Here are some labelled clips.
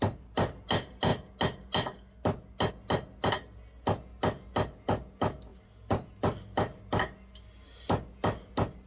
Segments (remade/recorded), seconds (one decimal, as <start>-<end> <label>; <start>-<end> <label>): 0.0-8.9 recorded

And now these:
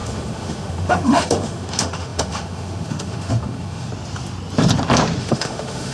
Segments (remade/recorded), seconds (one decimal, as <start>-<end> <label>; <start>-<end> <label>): 0.0-3.9 remade; 3.9-5.2 recorded; 5.2-5.9 remade

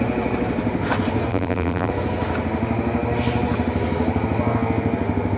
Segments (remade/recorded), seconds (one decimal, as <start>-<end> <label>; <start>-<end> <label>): 0.0-1.3 recorded; 1.3-1.9 remade; 1.9-5.4 recorded